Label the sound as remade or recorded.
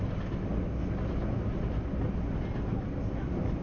recorded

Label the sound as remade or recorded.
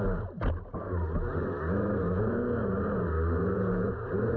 recorded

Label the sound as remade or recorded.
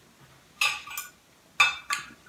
recorded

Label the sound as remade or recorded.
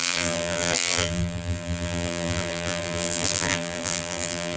remade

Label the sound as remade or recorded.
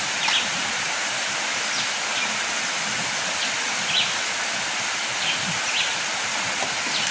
recorded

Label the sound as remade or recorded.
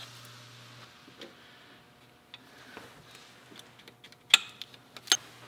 recorded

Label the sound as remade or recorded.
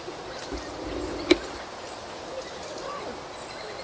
recorded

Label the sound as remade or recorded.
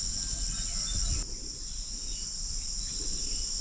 recorded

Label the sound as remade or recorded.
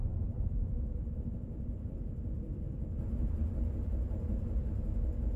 recorded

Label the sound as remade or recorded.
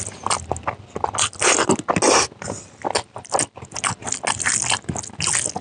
recorded